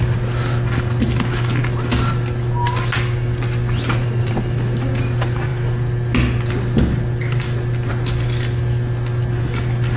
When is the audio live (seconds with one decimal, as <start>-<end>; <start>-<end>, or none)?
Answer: 0.0-10.0